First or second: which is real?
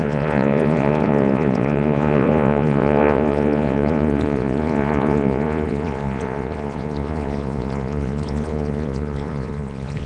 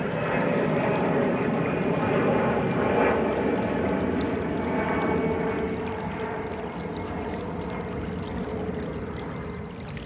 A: second